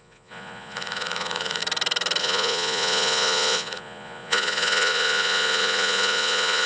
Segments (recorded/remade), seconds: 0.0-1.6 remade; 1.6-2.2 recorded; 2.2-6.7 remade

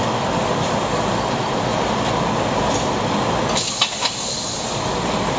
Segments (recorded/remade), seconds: 0.0-5.4 recorded

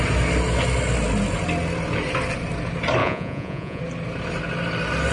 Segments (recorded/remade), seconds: 0.0-3.0 recorded; 3.0-3.8 remade; 3.8-5.1 recorded

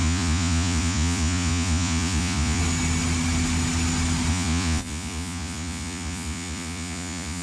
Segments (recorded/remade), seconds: 0.0-2.6 remade; 2.6-4.3 recorded; 4.3-7.4 remade

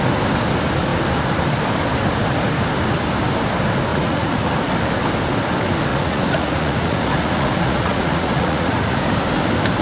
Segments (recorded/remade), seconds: 0.0-3.9 recorded; 3.9-4.5 remade; 4.5-5.9 recorded; 5.9-9.0 remade; 9.0-9.8 recorded

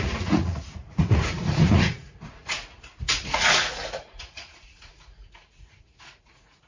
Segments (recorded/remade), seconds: 0.0-6.7 remade

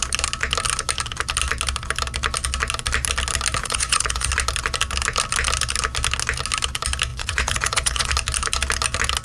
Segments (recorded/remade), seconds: 0.0-3.6 recorded; 3.6-4.3 remade; 4.3-7.1 recorded; 7.1-8.1 remade; 8.1-9.2 recorded

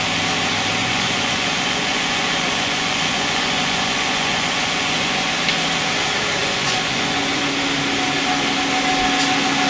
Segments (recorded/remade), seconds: 0.0-0.8 recorded; 0.8-5.3 remade; 5.3-6.4 recorded; 6.4-7.4 remade; 7.4-9.7 recorded